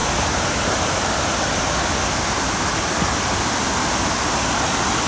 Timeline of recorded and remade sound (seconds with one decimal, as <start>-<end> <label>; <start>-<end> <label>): 0.0-5.1 recorded